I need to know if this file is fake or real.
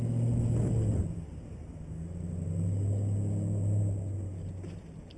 real